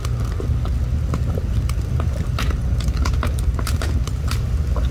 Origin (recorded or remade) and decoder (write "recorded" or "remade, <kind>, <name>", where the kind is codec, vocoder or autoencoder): recorded